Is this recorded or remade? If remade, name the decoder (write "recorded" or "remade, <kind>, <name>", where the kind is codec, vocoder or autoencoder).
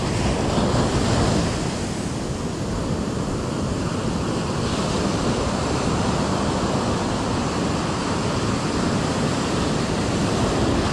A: recorded